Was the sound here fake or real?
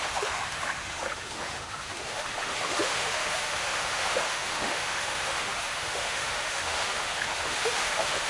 fake